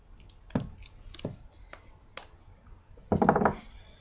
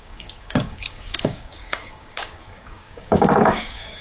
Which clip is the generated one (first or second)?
second